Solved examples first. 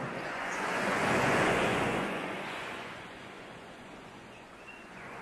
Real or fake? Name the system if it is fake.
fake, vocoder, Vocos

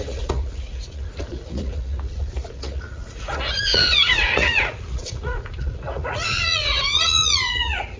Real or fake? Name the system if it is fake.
fake, vocoder, Vocos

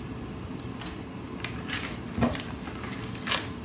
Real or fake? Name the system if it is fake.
real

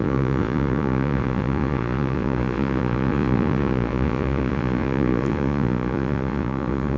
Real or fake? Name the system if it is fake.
fake, vocoder, Vocos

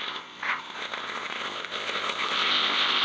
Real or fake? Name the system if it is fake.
fake, codec, ZipCodec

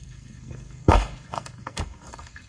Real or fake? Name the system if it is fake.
fake, codec, SNAC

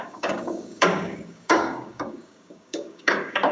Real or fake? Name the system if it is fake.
fake, codec, DAC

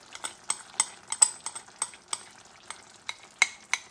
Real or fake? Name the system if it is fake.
real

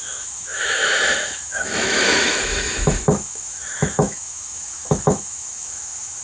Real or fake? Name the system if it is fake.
fake, autoencoder, DAC-VAE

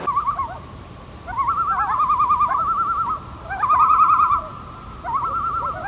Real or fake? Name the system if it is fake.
real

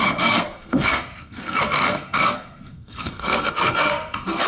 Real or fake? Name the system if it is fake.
fake, codec, SNAC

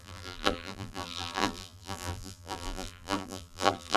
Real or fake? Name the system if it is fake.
fake, vocoder, BigVGAN v2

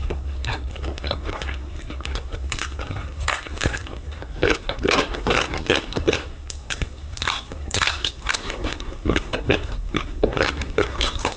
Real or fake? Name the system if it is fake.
fake, codec, SNAC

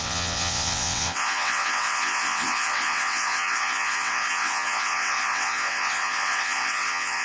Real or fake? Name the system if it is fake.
fake, vocoder, WaveNeXt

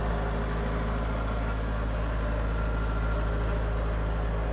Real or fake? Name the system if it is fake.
real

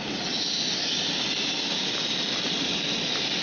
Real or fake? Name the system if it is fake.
real